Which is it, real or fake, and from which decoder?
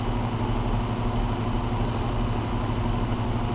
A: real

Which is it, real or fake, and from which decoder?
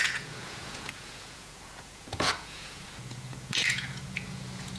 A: fake, vocoder, Vocos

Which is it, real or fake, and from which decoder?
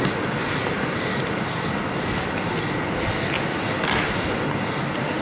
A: real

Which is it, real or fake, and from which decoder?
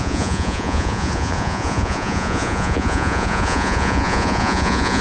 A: fake, vocoder, Vocos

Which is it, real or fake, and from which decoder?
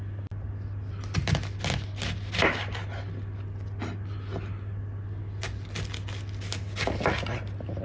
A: real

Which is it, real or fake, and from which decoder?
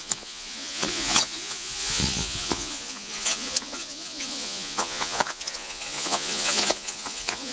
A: fake, vocoder, Vocos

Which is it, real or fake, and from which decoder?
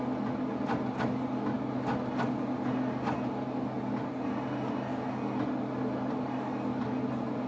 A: real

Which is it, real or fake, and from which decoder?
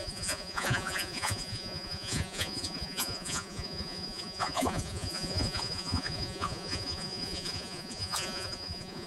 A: fake, vocoder, Vocos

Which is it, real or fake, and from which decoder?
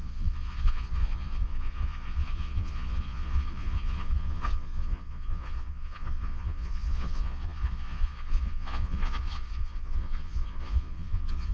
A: fake, vocoder, Vocos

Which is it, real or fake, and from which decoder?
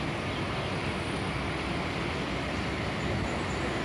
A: real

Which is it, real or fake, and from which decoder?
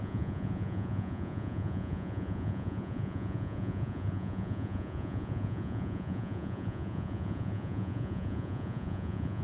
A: fake, vocoder, Vocos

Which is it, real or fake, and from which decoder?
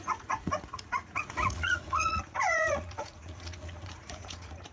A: fake, vocoder, Vocos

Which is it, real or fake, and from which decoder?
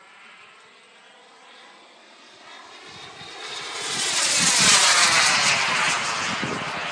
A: real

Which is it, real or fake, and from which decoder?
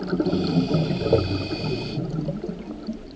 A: real